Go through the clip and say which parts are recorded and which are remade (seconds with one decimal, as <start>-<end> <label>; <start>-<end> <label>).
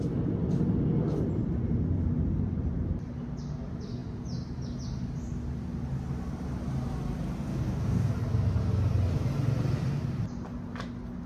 0.0-7.5 recorded; 7.5-8.1 remade; 8.1-11.3 recorded